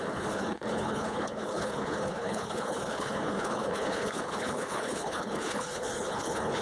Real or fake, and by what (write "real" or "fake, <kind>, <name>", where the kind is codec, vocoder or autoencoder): fake, codec, HILCodec